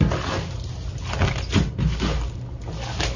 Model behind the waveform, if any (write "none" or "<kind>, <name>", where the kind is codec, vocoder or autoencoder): none